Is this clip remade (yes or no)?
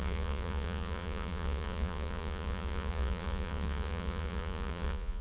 yes